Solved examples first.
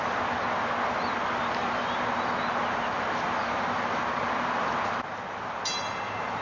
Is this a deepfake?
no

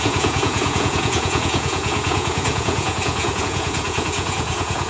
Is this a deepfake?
yes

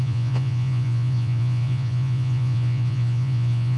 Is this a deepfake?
yes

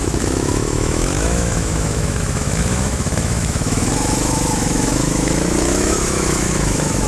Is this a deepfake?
yes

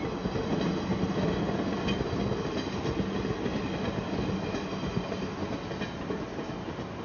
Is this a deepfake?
no